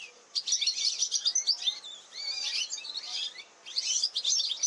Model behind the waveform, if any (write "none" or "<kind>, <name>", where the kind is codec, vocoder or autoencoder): none